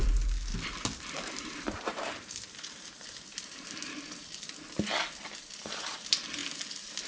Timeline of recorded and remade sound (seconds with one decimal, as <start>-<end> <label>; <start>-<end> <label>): 0.0-0.5 recorded; 0.5-4.5 remade; 4.5-7.1 recorded